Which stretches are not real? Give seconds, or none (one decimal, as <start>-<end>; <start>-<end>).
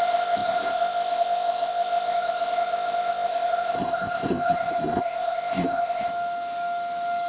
0.0-6.1